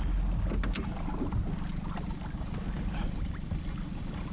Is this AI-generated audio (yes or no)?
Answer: no